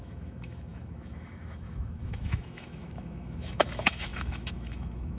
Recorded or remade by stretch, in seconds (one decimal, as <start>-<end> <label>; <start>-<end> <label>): 0.0-5.2 remade

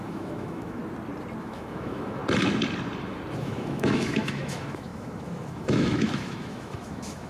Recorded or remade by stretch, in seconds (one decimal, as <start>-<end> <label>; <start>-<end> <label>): 0.0-0.8 remade; 0.8-1.4 recorded; 1.4-2.2 remade; 2.2-3.4 recorded; 3.4-7.3 remade

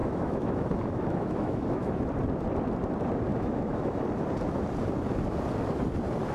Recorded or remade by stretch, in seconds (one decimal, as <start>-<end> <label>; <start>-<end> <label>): 0.0-2.0 remade; 2.0-3.3 recorded; 3.3-4.0 remade; 4.0-6.3 recorded

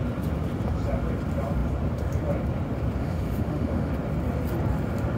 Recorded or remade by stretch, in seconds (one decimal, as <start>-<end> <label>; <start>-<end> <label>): 0.0-3.0 recorded; 3.0-3.9 remade; 3.9-5.2 recorded

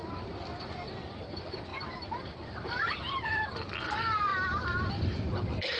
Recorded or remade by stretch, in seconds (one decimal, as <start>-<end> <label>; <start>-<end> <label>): 0.0-5.8 recorded

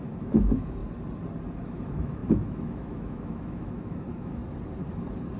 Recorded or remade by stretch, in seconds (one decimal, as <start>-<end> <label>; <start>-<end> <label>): 0.0-0.8 remade; 0.8-1.5 recorded; 1.5-4.4 remade; 4.4-5.4 recorded

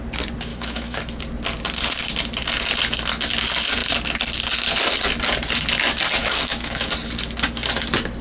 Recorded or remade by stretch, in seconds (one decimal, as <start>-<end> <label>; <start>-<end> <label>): 0.0-0.5 recorded; 0.5-1.2 remade; 1.2-6.2 recorded; 6.2-6.9 remade; 6.9-8.2 recorded

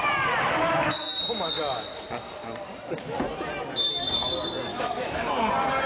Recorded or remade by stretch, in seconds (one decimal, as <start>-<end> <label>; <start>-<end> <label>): 0.0-0.5 recorded; 0.5-1.2 remade; 1.2-4.7 recorded; 4.7-5.3 remade; 5.3-5.9 recorded